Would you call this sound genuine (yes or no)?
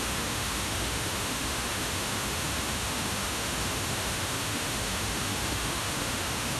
no